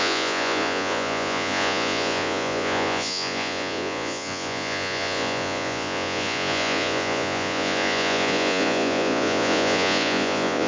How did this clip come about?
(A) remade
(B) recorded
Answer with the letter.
A